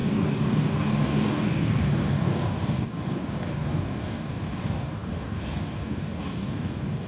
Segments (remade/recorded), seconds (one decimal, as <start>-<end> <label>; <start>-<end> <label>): 0.0-7.1 remade